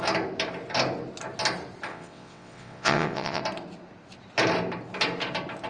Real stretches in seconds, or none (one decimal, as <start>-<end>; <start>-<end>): 0.0-1.9; 3.4-5.7